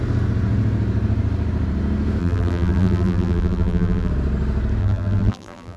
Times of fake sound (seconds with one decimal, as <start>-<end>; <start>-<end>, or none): 2.2-4.1; 4.8-5.8